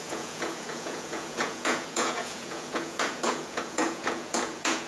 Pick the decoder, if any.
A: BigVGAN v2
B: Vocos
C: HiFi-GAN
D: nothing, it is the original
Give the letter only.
B